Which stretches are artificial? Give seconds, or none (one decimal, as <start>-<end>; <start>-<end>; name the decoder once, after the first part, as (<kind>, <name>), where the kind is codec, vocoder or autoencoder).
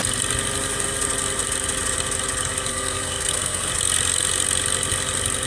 2.7-3.7 (codec, SNAC)